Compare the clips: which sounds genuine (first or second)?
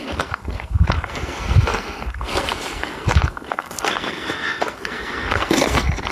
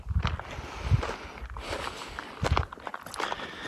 second